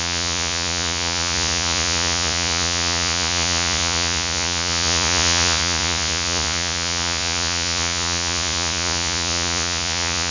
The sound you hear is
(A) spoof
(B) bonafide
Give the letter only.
A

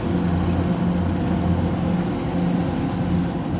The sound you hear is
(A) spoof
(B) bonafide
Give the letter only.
B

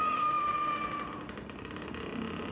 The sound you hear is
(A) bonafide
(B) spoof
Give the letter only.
A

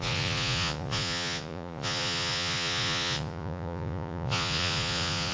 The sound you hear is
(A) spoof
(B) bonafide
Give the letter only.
A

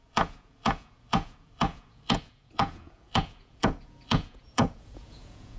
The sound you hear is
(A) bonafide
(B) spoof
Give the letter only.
B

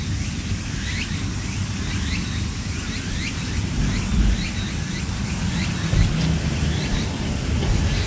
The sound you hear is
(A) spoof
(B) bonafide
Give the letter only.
B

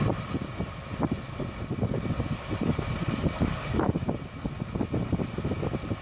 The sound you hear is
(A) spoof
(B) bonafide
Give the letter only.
B